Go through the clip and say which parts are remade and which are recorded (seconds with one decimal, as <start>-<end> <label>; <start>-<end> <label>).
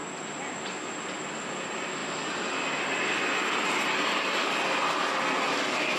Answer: 0.0-6.0 recorded